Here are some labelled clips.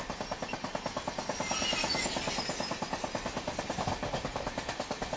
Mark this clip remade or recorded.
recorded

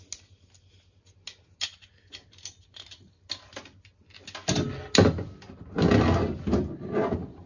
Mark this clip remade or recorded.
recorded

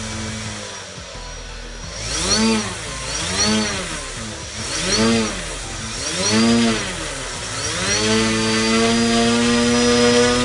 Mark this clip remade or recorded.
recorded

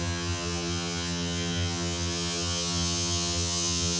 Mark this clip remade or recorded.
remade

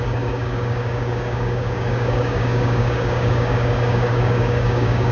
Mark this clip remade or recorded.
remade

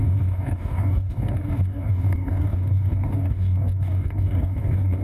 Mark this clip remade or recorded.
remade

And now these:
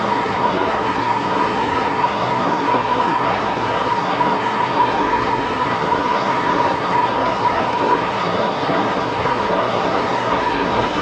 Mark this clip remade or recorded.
remade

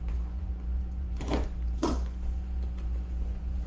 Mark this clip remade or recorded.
remade